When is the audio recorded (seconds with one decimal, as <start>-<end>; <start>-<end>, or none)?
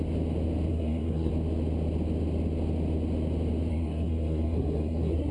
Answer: 0.0-0.7; 1.3-3.7